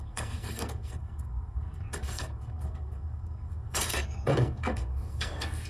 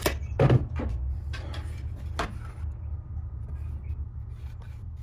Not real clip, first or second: first